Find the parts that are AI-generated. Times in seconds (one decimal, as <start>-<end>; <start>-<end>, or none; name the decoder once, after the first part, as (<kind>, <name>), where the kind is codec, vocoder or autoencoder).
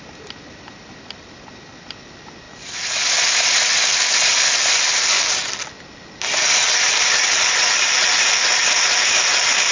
none